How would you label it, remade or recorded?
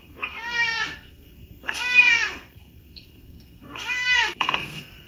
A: remade